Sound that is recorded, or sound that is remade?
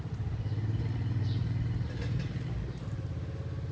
recorded